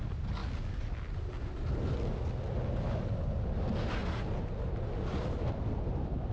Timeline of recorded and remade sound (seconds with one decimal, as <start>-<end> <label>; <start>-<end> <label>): 0.0-6.3 recorded